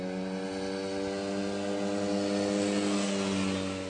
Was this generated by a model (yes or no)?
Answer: no